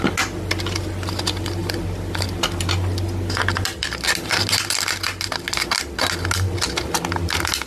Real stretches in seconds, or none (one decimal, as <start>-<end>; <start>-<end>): 0.0-7.7